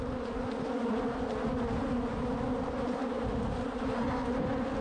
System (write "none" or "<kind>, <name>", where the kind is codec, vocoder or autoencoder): none